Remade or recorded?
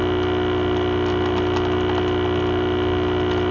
recorded